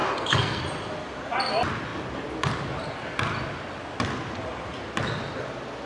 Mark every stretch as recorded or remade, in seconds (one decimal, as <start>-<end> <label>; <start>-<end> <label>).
0.0-0.6 remade; 0.6-5.9 recorded